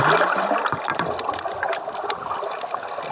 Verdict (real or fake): real